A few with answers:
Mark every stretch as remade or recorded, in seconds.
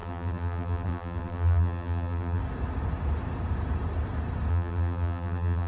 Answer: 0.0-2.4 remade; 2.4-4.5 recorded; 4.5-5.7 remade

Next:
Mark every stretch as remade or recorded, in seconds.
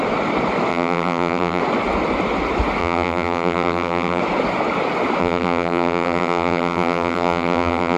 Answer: 0.0-0.7 recorded; 0.7-1.6 remade; 1.6-2.8 recorded; 2.8-4.2 remade; 4.2-5.2 recorded; 5.2-8.0 remade